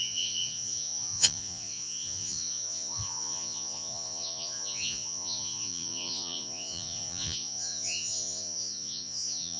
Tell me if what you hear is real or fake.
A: fake